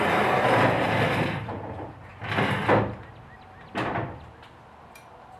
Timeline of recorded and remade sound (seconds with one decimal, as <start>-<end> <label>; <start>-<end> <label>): 0.0-5.4 recorded